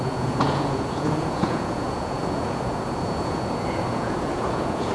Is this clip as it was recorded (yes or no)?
no